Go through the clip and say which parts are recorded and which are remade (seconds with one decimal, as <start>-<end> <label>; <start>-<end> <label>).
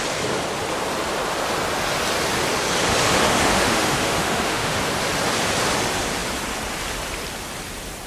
0.0-3.2 recorded; 3.2-4.8 remade; 4.8-8.1 recorded